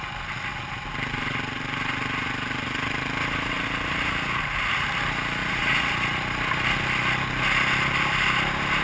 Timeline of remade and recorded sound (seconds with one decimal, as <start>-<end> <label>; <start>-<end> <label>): 0.0-5.4 recorded; 5.4-5.9 remade; 5.9-8.8 recorded